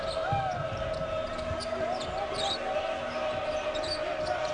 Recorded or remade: recorded